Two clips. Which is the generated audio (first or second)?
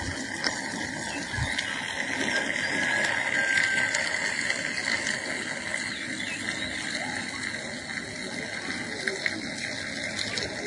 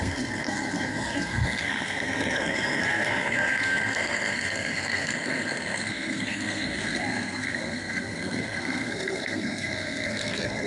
second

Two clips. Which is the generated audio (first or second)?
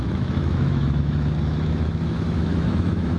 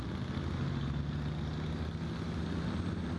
first